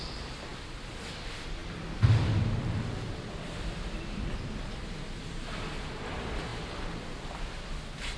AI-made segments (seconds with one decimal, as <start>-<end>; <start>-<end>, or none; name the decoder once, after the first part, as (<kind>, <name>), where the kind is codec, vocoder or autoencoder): 0.0-6.5 (vocoder, BigVGAN v2); 7.1-8.2